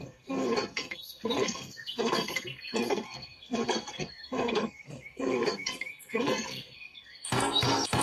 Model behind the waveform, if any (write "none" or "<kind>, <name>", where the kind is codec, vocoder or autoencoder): codec, SNAC